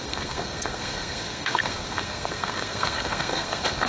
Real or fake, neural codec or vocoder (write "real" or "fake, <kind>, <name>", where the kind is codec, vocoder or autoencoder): fake, codec, SNAC